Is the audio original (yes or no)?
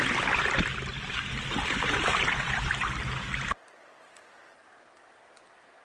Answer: yes